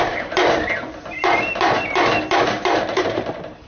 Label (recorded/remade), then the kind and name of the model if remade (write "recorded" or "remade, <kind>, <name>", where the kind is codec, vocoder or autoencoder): remade, vocoder, BigVGAN v2